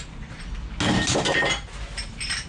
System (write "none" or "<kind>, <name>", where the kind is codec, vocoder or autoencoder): none